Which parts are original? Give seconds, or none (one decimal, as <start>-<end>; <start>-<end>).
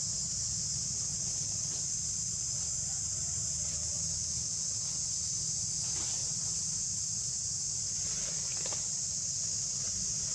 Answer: 0.0-10.3